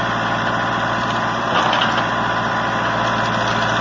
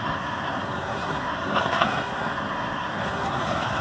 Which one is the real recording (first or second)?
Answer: first